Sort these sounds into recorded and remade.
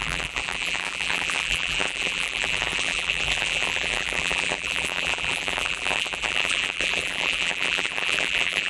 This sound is remade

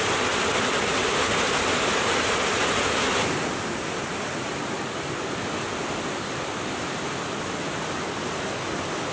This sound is recorded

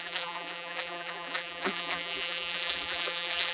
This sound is remade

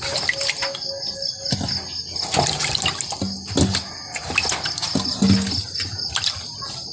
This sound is recorded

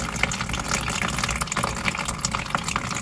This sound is recorded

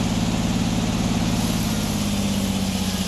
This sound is recorded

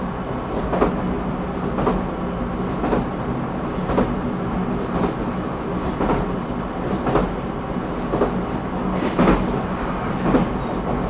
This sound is recorded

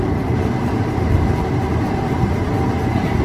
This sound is remade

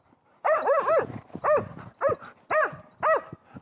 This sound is recorded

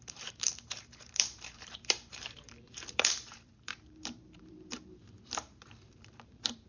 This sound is remade